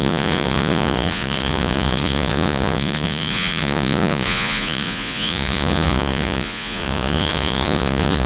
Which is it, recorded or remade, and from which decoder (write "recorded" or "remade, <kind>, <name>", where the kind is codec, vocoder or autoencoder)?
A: remade, vocoder, Vocos